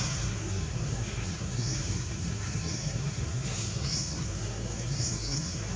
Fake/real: fake